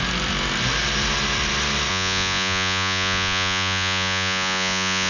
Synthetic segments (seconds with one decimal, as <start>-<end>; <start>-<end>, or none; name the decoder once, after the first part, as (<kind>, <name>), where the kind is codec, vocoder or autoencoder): 1.9-5.1 (vocoder, Vocos)